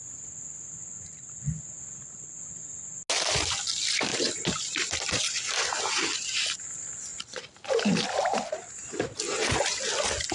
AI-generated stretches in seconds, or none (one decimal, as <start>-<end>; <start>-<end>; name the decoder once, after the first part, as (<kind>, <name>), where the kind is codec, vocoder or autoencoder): none